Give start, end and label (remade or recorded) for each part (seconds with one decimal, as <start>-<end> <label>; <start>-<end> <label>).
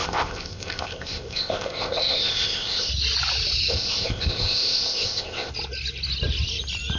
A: 0.0-2.9 remade; 2.9-3.7 recorded; 3.7-5.5 remade; 5.5-7.0 recorded